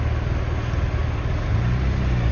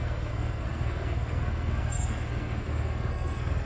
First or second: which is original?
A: first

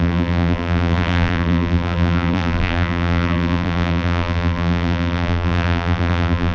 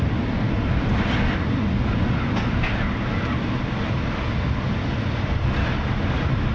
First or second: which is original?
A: second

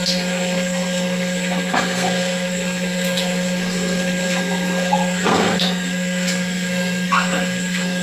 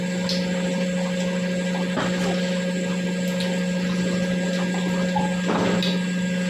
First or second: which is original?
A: second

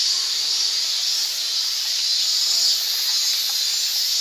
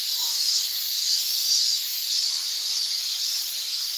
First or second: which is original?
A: first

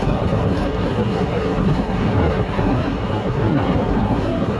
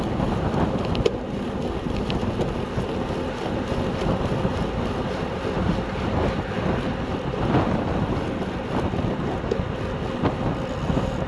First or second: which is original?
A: second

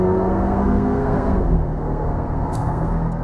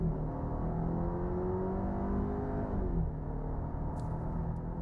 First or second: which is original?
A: second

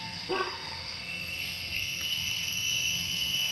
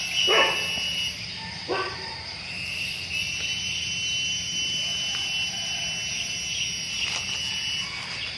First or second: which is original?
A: second